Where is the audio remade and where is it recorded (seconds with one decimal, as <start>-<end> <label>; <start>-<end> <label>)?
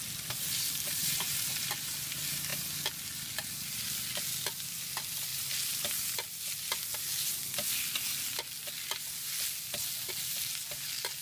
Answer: 0.0-1.0 recorded; 1.0-1.5 remade; 1.5-11.2 recorded